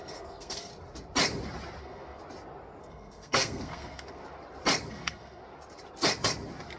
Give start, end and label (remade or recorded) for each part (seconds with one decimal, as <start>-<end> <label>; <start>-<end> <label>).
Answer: 0.0-0.7 remade; 0.7-1.8 recorded; 1.8-2.2 remade; 2.2-2.8 recorded; 2.8-4.2 remade; 4.2-4.9 recorded; 4.9-5.4 remade; 5.4-6.8 recorded